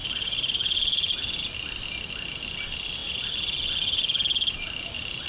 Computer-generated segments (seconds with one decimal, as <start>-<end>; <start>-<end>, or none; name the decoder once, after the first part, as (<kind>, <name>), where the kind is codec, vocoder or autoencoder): none